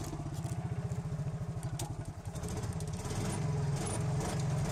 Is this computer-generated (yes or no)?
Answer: no